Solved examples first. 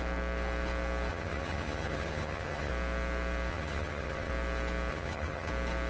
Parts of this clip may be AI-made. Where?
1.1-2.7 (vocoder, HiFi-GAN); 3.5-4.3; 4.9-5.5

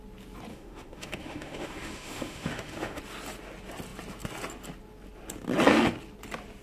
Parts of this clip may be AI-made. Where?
0.5-3.0 (autoencoder, DAC-VAE)

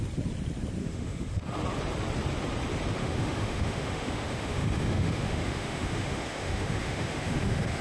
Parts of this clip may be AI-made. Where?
0.8-1.4 (autoencoder, DAC-VAE); 3.0-7.8